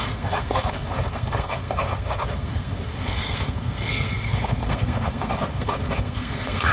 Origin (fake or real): fake